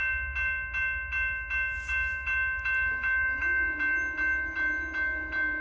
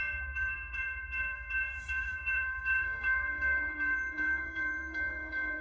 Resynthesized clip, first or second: second